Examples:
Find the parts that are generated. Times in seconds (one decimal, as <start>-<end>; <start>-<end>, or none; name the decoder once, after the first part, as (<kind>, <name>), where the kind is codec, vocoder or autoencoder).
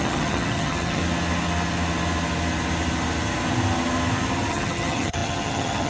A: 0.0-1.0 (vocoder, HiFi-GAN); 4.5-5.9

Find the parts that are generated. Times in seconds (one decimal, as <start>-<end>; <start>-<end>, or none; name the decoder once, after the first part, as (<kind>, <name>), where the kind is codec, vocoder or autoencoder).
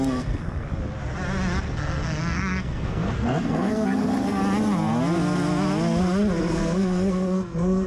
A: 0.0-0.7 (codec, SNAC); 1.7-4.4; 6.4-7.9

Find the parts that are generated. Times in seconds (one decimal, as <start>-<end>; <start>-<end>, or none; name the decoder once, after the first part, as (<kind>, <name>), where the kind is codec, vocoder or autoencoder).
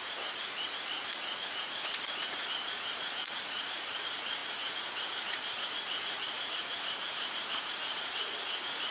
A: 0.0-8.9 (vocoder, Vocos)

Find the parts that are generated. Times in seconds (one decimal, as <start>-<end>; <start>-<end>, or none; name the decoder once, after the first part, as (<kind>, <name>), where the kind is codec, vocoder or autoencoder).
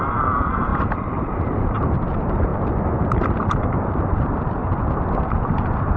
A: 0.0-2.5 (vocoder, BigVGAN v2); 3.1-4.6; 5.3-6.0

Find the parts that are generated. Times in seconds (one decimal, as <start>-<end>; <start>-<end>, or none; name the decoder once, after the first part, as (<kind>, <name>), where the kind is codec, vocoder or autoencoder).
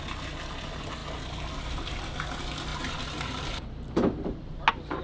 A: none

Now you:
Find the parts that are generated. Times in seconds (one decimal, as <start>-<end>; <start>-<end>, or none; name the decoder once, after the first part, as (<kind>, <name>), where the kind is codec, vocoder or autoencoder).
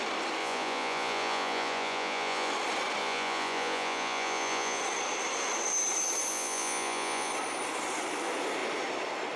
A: 0.4-2.5 (vocoder, Vocos); 3.0-4.8; 6.3-7.3